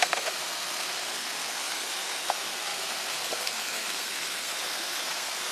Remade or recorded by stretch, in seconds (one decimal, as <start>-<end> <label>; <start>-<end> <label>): 0.0-5.5 remade